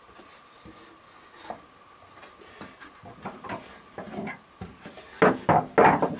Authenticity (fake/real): real